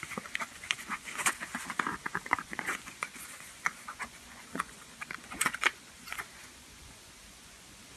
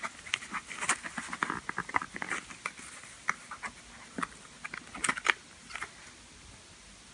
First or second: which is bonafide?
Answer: second